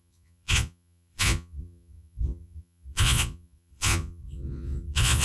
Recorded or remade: remade